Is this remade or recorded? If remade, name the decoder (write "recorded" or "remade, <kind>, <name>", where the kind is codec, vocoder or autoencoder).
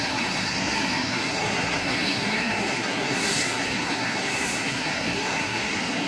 remade, codec, SNAC